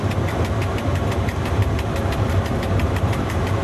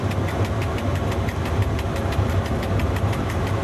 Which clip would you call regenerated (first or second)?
first